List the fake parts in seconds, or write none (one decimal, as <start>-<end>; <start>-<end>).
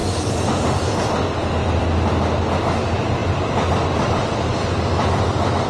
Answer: none